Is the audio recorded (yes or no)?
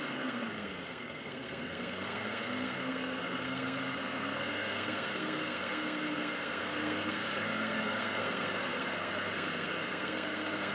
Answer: no